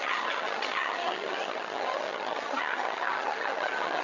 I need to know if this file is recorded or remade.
remade